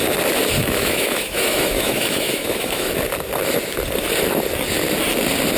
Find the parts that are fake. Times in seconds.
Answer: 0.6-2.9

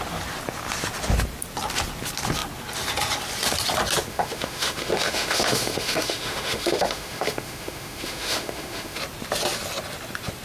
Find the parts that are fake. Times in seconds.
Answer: 4.1-9.0